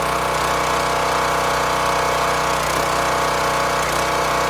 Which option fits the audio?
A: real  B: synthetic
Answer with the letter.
A